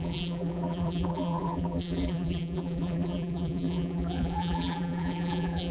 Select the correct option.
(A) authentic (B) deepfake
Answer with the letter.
B